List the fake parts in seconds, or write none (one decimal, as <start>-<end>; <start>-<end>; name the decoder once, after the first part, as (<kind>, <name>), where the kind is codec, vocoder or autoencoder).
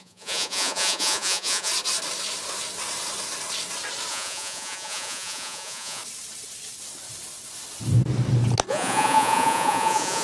0.0-1.7 (vocoder, Vocos); 4.1-6.0; 8.7-10.2